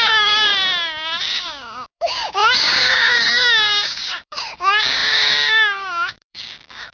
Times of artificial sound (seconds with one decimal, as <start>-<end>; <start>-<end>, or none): 0.0-0.5; 1.4-6.9